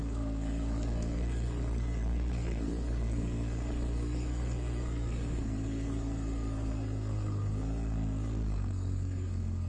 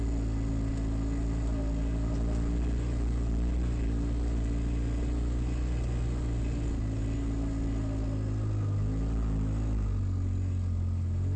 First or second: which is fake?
first